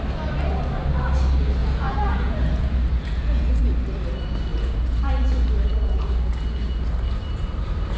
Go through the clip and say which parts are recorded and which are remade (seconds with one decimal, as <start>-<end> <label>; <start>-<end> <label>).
0.0-1.6 recorded; 1.6-3.6 remade; 3.6-4.5 recorded; 4.5-5.1 remade; 5.1-8.0 recorded

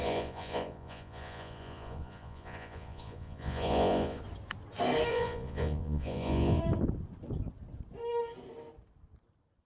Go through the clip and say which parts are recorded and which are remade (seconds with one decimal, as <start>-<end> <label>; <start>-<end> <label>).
0.0-4.2 remade; 4.2-5.1 recorded; 5.1-6.6 remade; 6.6-9.7 recorded

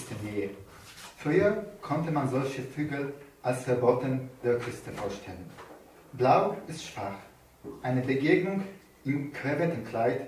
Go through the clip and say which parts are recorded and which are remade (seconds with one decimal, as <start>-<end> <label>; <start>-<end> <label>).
0.0-10.3 recorded

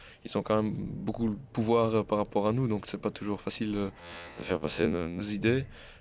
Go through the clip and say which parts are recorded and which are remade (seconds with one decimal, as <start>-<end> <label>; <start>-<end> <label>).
0.0-4.0 recorded; 4.0-5.2 remade; 5.2-6.0 recorded

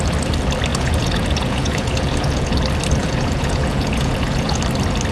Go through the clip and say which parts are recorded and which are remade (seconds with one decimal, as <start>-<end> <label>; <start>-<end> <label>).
0.0-0.7 recorded; 0.7-2.5 remade; 2.5-3.0 recorded; 3.0-4.6 remade; 4.6-5.1 recorded

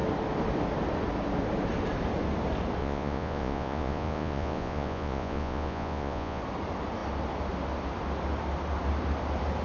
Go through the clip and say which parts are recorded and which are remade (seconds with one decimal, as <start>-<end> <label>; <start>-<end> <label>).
0.0-2.8 recorded; 2.8-6.4 remade; 6.4-9.6 recorded

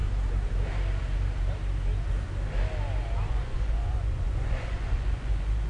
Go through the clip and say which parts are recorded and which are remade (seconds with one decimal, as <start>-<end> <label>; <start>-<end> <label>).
0.0-3.3 recorded; 3.3-5.7 remade